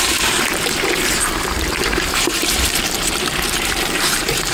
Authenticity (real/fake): fake